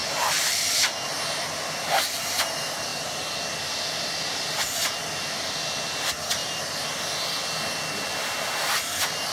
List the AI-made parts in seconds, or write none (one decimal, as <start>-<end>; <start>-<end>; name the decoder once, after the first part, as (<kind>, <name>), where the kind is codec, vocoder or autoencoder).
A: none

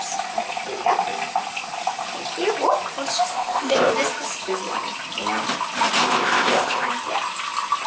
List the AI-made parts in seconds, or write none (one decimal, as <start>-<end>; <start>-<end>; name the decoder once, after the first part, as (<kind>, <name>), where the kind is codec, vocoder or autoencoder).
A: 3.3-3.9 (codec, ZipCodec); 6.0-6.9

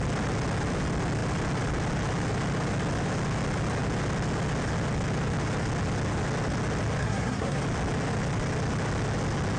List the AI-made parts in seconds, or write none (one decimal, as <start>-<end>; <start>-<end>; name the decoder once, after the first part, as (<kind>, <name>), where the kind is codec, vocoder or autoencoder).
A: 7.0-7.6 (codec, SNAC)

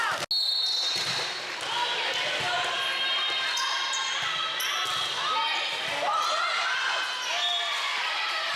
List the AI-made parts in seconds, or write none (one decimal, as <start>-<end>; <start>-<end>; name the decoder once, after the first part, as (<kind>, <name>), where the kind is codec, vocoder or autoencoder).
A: none

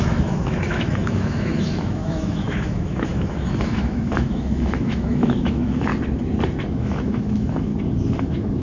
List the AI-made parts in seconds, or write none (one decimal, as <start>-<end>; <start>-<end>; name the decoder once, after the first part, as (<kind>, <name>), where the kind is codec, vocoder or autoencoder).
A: 0.0-5.9 (autoencoder, DAC-VAE); 6.7-7.7; 8.2-8.6